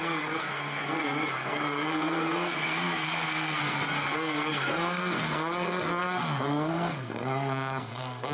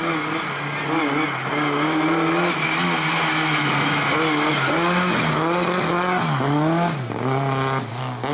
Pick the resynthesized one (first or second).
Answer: first